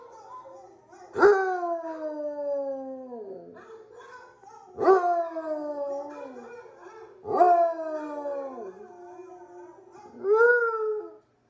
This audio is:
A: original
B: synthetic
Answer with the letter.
A